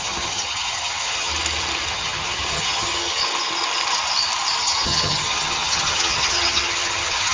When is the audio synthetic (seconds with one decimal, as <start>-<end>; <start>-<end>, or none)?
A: 0.0-1.3; 1.9-3.2; 4.6-7.3